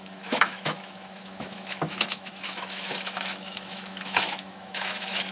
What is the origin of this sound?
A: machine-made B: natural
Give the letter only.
A